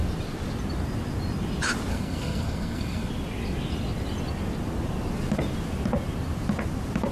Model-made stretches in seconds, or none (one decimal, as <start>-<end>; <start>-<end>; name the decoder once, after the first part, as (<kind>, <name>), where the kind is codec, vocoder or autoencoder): 1.9-3.1 (codec, SNAC)